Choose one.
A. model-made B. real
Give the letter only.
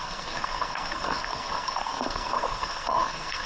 A